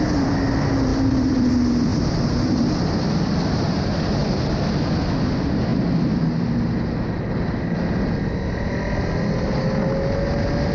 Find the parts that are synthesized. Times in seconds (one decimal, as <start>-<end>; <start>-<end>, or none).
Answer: 0.9-1.5; 1.9-3.4; 4.2-4.7

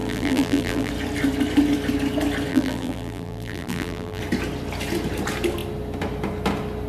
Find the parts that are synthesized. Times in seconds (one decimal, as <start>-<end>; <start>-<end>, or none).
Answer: 0.0-0.9; 2.5-4.2